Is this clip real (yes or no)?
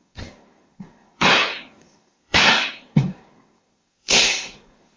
no